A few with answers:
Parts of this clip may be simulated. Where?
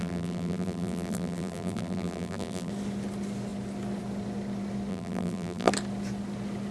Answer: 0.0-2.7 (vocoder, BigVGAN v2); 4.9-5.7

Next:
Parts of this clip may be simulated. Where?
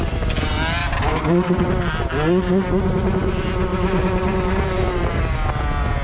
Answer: 0.8-1.7 (vocoder, BigVGAN v2); 3.7-5.2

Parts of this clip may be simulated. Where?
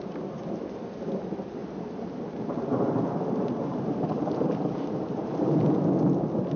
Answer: 1.6-5.6 (vocoder, BigVGAN v2)